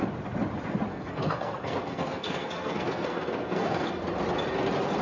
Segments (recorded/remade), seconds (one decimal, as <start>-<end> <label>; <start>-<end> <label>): 0.0-0.9 recorded; 0.9-3.9 remade; 3.9-5.0 recorded